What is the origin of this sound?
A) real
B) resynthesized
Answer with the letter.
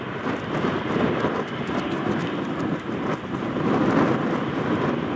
A